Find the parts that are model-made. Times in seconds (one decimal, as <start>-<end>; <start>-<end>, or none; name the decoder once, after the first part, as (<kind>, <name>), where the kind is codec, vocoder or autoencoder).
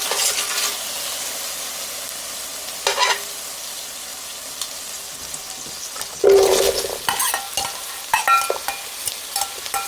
none